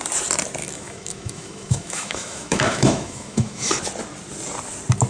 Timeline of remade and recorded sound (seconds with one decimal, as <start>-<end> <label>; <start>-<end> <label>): 0.0-0.6 recorded; 0.6-3.7 remade; 3.7-5.1 recorded